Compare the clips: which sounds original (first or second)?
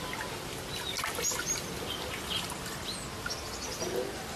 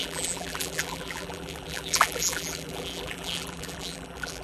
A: first